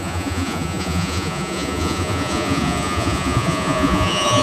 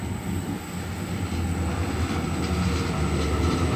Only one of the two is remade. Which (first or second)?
first